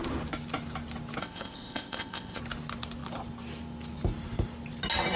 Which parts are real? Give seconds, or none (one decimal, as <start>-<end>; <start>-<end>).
0.0-1.2; 2.4-5.2

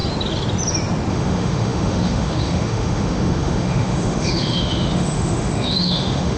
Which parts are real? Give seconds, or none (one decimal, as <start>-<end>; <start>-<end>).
0.0-1.1

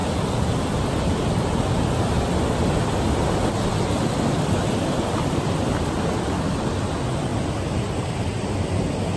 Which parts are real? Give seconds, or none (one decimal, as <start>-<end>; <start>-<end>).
0.0-9.2

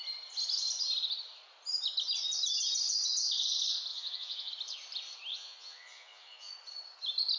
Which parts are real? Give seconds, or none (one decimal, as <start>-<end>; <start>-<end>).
0.0-3.9; 4.5-5.3; 6.5-7.4

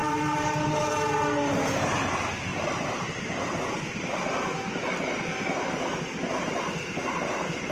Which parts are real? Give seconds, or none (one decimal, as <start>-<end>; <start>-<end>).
0.9-7.7